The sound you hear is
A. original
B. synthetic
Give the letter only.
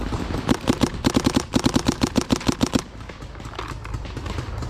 A